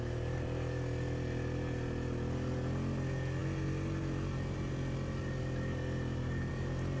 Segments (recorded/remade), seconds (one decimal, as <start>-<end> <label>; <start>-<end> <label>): 0.0-7.0 recorded